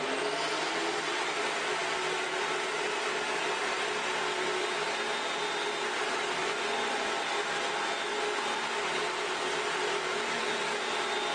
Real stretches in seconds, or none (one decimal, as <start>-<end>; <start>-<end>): 0.0-6.4; 7.2-11.3